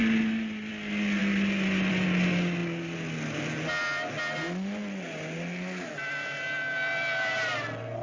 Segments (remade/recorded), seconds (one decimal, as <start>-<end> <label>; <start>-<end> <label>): 0.0-8.0 recorded